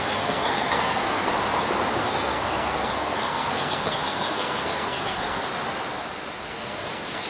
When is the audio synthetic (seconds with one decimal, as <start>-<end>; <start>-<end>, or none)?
0.0-1.3; 2.0-5.5; 6.5-7.3